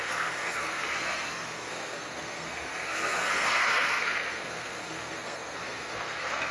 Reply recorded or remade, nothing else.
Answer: remade